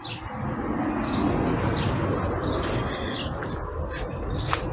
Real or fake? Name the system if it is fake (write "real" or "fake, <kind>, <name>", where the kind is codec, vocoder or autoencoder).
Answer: real